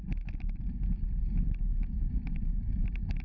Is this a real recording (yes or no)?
no